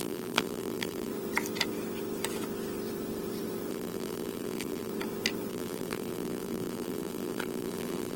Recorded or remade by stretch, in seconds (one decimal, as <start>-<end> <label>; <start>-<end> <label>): 0.0-1.1 remade; 1.1-3.7 recorded; 3.7-4.9 remade; 4.9-5.5 recorded; 5.5-8.2 remade